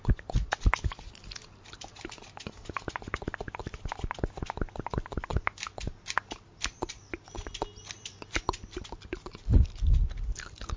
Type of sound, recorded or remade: recorded